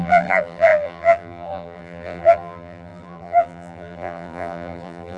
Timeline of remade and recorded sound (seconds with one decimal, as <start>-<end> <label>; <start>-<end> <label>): 0.0-5.2 remade